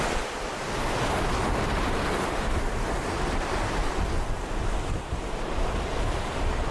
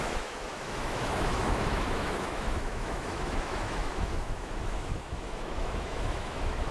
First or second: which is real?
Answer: first